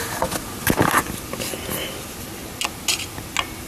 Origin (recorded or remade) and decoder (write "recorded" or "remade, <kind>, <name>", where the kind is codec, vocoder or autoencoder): recorded